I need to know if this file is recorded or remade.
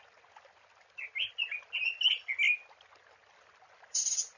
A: recorded